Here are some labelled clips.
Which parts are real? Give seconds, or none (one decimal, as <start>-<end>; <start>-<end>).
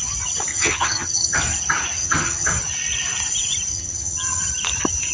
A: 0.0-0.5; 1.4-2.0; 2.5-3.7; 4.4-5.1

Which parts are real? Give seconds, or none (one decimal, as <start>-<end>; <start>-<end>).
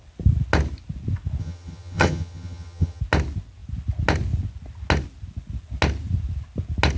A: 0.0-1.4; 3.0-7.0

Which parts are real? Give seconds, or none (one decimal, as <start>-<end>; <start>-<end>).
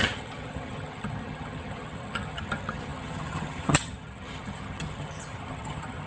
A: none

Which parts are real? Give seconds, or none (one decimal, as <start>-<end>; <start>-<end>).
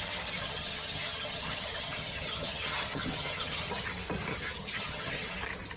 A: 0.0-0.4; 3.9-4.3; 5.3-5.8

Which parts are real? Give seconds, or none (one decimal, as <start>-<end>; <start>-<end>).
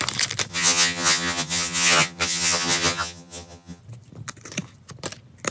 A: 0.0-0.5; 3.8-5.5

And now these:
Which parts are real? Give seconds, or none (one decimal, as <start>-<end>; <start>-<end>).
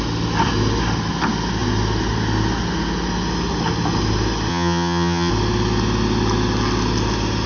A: 0.0-4.5; 5.3-7.5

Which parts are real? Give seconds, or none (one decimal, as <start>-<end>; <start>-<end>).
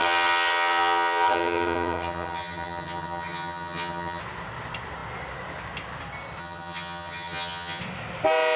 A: 4.2-6.4; 7.8-8.6